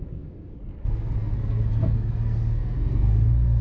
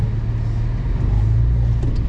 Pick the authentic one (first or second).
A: second